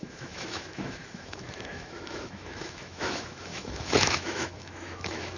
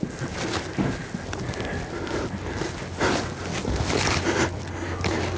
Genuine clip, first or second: second